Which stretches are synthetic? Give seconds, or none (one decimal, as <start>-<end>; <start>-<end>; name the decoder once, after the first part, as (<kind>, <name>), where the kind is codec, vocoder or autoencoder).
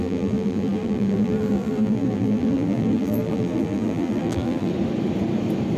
0.0-4.7 (vocoder, BigVGAN v2)